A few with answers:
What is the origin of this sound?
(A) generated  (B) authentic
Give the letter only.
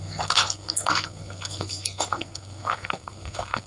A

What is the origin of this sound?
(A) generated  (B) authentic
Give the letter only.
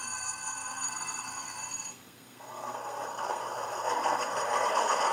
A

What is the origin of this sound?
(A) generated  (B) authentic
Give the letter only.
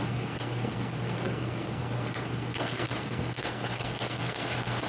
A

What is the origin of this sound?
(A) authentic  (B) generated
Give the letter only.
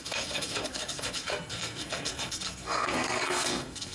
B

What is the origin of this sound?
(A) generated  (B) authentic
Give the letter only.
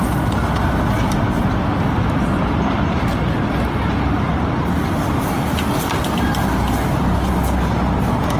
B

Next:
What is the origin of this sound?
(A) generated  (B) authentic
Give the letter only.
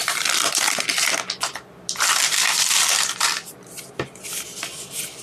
B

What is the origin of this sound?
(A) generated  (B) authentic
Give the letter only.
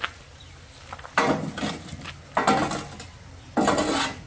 B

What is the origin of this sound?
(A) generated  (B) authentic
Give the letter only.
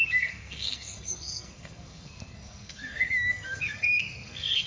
A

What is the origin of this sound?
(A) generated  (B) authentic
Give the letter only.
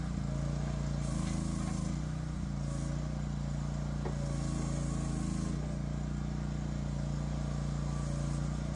B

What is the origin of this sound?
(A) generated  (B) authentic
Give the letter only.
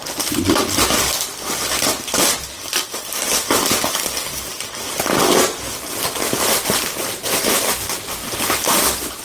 B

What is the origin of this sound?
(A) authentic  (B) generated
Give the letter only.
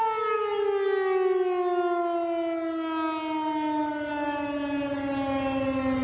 A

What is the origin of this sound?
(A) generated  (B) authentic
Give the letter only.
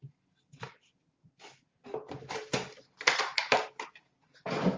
B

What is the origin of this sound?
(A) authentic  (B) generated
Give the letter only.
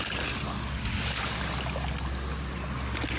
A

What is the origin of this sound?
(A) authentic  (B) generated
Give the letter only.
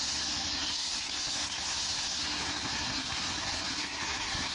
B